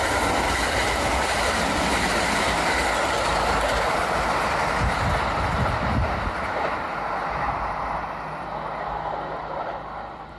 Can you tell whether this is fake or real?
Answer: real